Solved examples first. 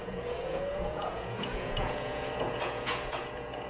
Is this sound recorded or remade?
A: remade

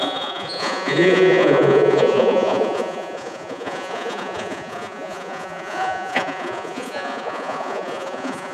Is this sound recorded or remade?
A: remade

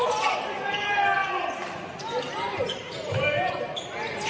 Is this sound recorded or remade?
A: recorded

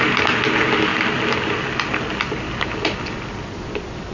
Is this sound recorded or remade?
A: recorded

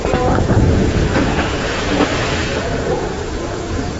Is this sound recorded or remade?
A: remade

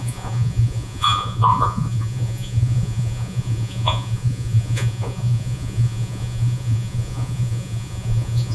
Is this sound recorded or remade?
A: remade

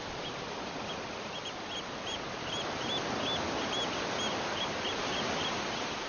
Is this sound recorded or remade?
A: recorded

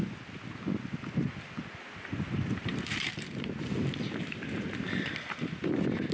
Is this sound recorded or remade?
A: recorded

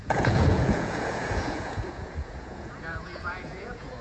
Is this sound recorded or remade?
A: remade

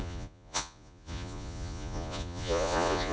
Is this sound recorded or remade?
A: remade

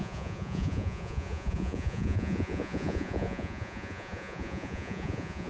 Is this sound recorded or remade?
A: remade